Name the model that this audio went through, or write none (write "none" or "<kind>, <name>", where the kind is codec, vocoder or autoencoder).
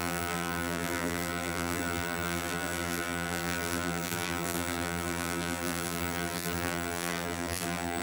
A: vocoder, BigVGAN v2